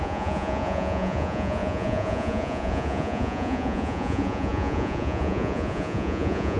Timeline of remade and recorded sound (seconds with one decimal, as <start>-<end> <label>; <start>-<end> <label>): 0.0-6.6 remade